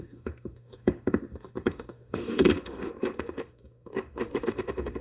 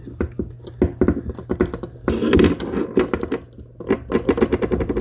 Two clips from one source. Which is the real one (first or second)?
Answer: second